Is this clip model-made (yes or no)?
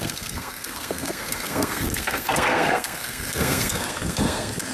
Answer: yes